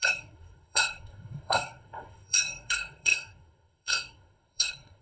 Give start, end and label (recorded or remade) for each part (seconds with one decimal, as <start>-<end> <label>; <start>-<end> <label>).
0.0-5.0 remade

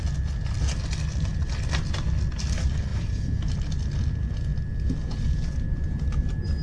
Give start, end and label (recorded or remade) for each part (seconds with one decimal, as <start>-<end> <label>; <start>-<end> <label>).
0.0-6.6 recorded

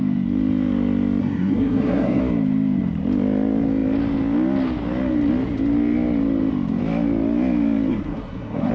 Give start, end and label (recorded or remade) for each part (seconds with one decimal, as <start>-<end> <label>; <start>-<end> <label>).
0.0-1.2 recorded; 1.2-2.2 remade; 2.2-7.9 recorded; 7.9-8.7 remade